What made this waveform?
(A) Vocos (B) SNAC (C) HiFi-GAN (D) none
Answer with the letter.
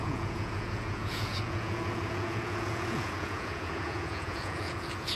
A